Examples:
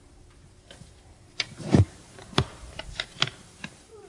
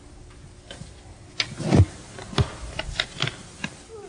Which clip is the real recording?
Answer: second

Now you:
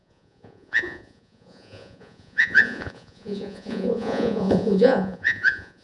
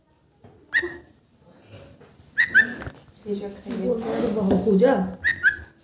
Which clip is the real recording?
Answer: second